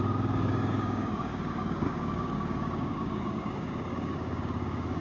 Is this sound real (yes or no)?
no